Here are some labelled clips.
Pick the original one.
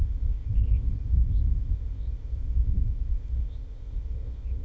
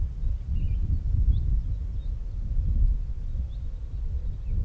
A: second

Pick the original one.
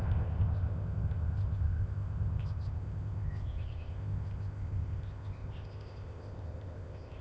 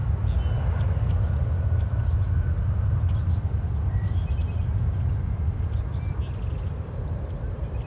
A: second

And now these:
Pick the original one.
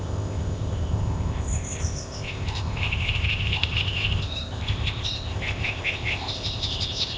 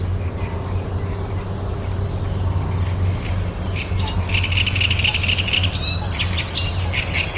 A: second